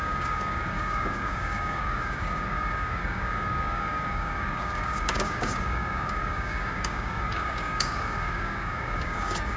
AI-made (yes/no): yes